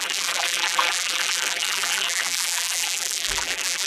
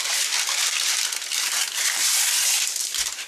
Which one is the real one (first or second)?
second